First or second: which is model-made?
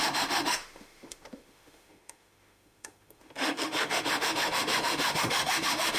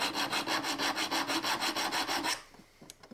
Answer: first